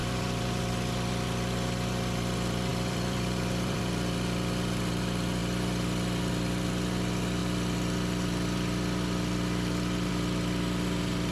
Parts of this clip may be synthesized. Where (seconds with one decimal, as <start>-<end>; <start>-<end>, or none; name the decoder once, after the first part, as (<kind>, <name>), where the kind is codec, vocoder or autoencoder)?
0.0-0.7 (vocoder, BigVGAN v2); 2.7-3.8